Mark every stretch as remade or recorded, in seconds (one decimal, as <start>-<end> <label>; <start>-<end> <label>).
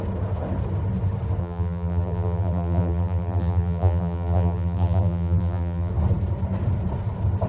0.0-1.4 recorded; 1.4-5.9 remade; 5.9-7.5 recorded